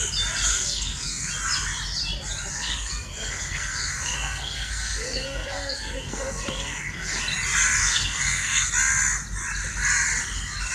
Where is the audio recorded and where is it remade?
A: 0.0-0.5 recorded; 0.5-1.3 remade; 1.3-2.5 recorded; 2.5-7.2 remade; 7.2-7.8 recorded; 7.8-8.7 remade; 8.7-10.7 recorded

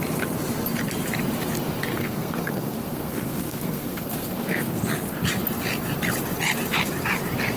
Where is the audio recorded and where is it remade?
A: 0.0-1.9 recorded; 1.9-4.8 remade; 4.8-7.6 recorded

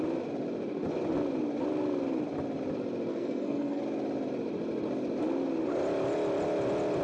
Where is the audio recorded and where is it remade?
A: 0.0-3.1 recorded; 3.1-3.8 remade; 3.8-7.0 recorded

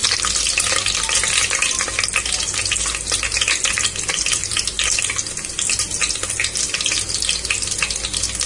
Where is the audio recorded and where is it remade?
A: 0.0-8.5 recorded

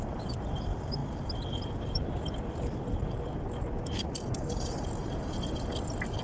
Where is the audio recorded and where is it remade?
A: 0.0-6.2 recorded